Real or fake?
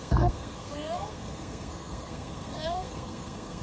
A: fake